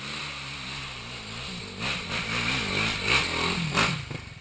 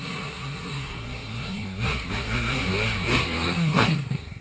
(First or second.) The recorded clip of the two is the first